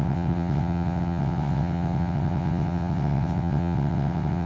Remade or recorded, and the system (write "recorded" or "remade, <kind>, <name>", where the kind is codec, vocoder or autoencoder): remade, vocoder, WaveNeXt